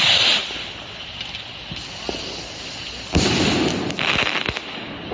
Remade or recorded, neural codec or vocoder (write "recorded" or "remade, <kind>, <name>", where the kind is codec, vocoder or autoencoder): recorded